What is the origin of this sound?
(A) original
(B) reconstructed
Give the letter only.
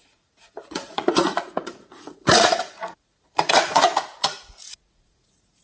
B